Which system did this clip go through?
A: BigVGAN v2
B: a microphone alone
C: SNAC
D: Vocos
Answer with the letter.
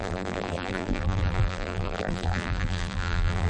A